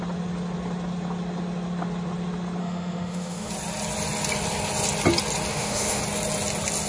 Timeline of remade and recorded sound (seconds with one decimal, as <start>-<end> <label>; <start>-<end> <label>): 0.0-2.6 recorded; 2.6-3.5 remade; 3.5-5.5 recorded; 5.5-6.0 remade; 6.0-6.9 recorded